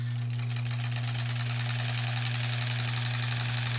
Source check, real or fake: real